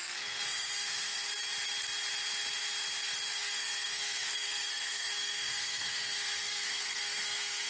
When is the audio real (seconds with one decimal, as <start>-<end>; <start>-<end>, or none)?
1.3-3.3